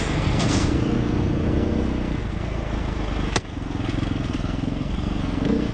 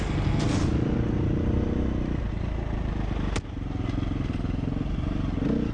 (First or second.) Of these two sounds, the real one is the second